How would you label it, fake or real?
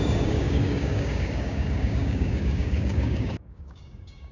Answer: fake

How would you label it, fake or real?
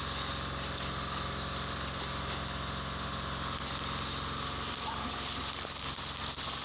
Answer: real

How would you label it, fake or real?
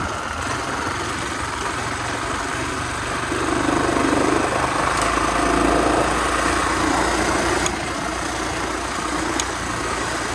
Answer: real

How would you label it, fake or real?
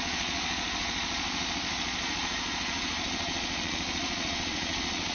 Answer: fake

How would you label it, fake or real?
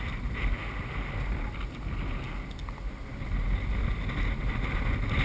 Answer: real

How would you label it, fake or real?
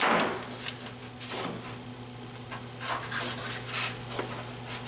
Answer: real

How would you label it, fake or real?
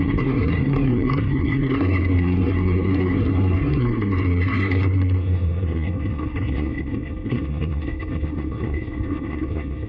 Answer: fake